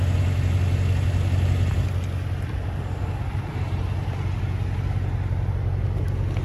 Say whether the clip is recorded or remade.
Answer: recorded